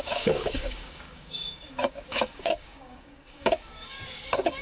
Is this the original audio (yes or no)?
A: no